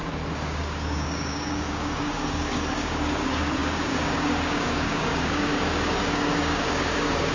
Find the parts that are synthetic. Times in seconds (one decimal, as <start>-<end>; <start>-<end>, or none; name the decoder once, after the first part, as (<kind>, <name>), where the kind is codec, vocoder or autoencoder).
0.0-7.3 (codec, DAC)